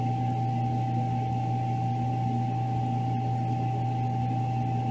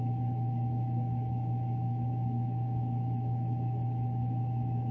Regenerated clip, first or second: second